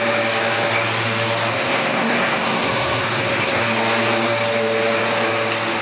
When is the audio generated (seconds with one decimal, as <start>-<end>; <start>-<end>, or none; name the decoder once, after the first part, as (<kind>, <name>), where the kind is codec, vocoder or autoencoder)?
1.5-3.6 (codec, SNAC)